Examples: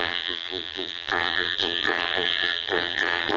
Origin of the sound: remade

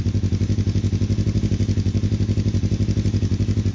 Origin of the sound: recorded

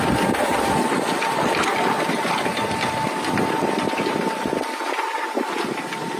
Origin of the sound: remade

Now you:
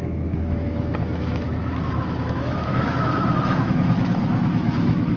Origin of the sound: remade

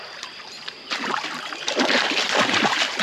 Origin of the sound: remade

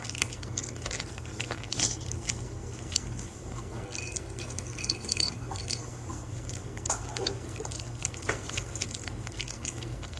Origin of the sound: remade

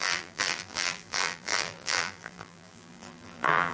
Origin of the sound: remade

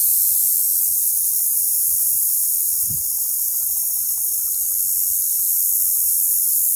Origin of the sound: recorded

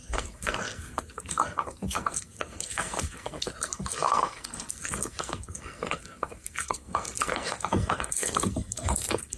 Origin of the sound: remade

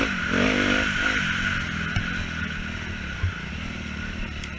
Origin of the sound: recorded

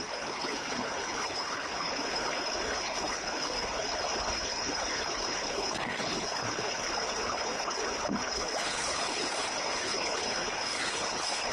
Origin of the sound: remade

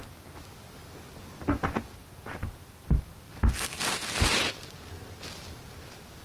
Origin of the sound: recorded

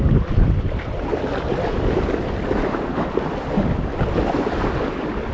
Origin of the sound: recorded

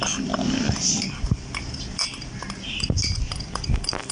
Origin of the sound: remade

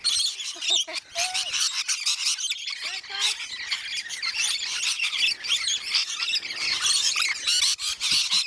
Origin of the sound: recorded